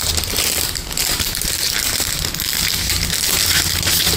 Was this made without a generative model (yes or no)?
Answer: yes